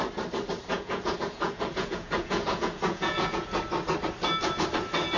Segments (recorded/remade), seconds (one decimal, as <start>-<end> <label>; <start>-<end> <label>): 0.0-0.7 recorded; 0.7-3.6 remade; 3.6-5.2 recorded